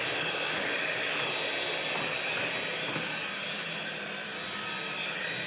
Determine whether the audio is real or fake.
real